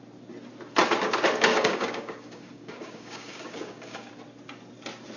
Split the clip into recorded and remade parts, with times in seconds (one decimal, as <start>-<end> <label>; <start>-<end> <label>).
0.0-1.5 recorded; 1.5-4.1 remade; 4.1-5.2 recorded